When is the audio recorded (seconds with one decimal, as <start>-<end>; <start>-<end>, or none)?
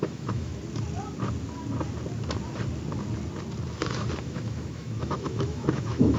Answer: 0.5-4.2